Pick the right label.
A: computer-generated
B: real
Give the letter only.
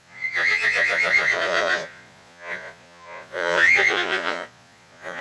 A